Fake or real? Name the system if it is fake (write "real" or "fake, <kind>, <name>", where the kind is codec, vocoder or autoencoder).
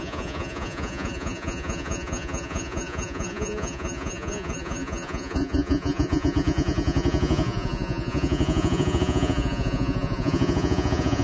fake, vocoder, Vocos